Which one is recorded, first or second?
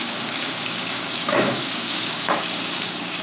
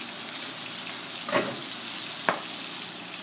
second